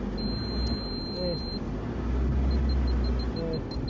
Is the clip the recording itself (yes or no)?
yes